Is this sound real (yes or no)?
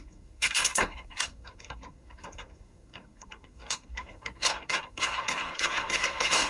no